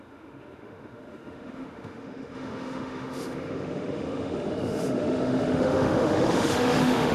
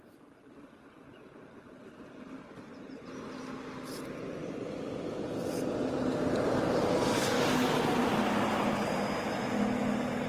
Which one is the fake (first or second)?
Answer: first